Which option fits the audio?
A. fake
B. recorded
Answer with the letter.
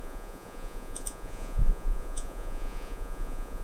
A